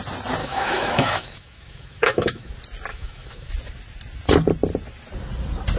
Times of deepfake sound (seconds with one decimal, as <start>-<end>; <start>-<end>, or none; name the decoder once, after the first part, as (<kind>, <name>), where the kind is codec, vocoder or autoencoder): 0.4-2.5 (autoencoder, DAC-VAE); 2.9-3.5